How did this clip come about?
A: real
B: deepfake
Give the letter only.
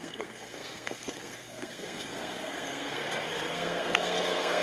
B